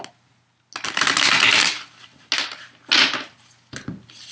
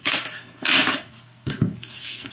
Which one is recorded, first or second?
first